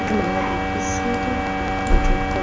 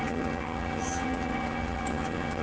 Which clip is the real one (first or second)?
first